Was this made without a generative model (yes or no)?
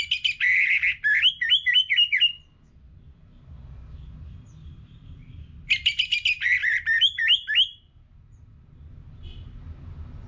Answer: yes